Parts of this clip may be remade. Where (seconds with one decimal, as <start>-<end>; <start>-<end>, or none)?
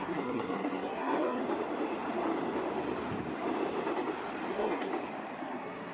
0.0-1.4; 4.5-4.9; 5.4-5.9